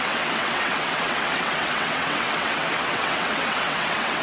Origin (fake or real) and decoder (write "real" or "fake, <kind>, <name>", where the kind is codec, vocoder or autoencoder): fake, vocoder, WaveNeXt